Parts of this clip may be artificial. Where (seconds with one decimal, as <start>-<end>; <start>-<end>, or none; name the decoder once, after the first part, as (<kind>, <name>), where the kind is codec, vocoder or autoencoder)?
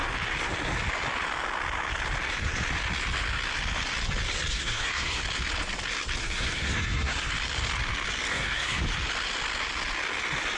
4.5-5.2 (codec, SNAC); 6.2-7.3; 8.3-8.8